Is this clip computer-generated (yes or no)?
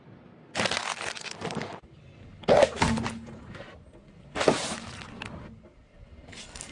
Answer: no